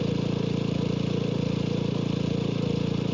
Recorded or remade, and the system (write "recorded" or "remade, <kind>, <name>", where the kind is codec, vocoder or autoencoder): recorded